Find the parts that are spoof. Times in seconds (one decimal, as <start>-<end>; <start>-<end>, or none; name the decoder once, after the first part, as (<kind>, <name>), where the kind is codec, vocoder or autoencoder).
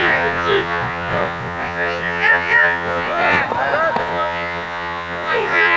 0.0-3.4 (vocoder, Vocos); 4.0-5.8